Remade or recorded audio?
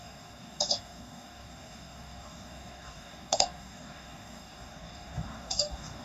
remade